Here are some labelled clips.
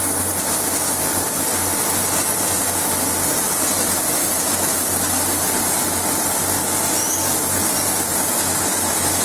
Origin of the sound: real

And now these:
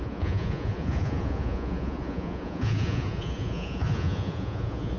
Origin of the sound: fake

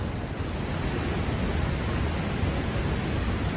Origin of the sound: real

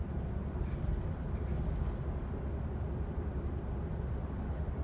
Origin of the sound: real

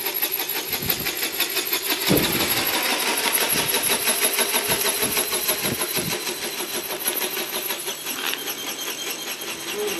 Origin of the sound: real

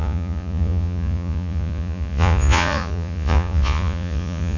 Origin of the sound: fake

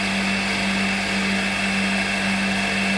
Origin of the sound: real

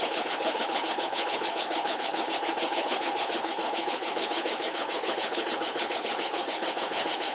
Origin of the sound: fake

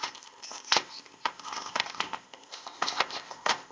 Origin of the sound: fake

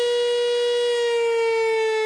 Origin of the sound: real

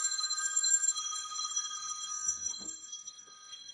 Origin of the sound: fake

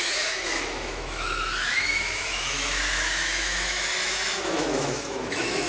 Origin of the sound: fake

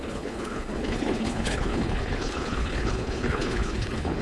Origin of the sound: fake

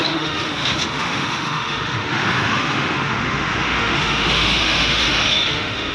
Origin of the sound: fake